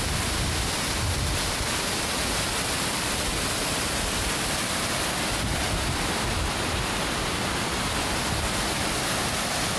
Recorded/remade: recorded